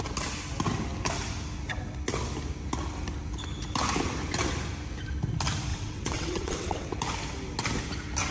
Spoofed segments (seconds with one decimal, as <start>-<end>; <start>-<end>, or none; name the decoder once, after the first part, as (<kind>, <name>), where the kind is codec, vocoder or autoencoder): 5.7-6.9 (vocoder, WaveNeXt)